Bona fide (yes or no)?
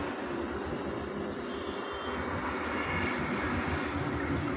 yes